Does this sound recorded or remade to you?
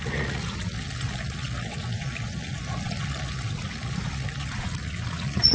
remade